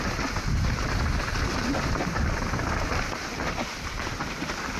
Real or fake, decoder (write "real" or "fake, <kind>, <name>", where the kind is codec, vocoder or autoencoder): real